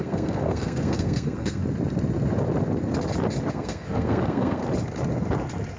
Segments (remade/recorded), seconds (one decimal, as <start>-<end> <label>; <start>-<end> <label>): 0.0-1.6 remade; 1.6-3.5 recorded; 3.5-4.6 remade; 4.6-5.8 recorded